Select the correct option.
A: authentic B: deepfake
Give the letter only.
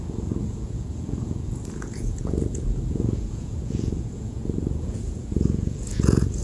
B